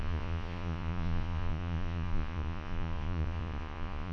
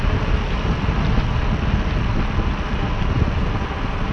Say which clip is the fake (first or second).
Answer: first